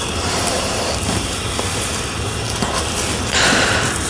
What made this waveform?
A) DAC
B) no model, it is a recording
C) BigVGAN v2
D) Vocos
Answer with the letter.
B